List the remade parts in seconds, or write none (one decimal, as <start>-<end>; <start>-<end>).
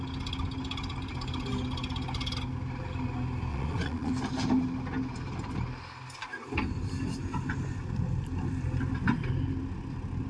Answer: 3.5-4.1